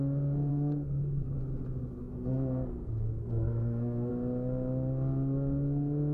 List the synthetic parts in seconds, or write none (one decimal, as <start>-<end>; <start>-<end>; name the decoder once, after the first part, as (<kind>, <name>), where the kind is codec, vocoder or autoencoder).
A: 0.5-1.4 (codec, SNAC); 2.0-4.1